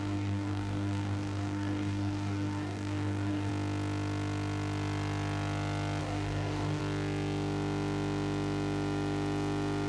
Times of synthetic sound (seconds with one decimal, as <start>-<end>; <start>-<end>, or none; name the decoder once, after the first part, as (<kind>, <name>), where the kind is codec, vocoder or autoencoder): 0.0-3.5 (codec, DAC); 6.0-6.8